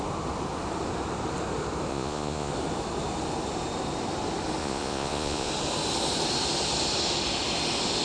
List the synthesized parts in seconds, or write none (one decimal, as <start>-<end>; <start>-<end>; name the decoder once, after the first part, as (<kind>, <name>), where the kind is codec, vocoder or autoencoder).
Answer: 1.9-2.5 (vocoder, Vocos); 4.6-5.5